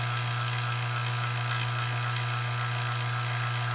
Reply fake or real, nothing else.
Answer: real